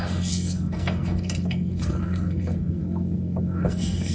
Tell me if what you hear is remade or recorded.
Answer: remade